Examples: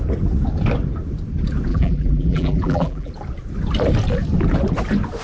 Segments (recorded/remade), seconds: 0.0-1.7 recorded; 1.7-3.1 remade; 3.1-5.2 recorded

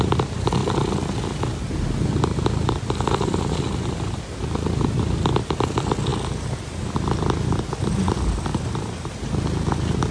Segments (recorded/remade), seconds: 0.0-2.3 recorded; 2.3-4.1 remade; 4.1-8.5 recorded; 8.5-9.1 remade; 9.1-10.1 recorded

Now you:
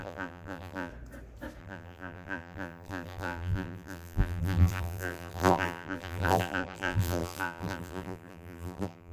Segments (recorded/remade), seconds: 0.0-0.9 remade; 0.9-1.6 recorded; 1.6-9.1 remade